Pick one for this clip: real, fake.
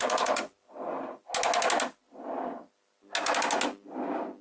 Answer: real